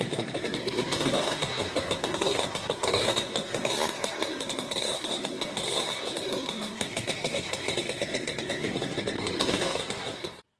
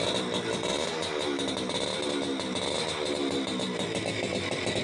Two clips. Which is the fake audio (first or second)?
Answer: first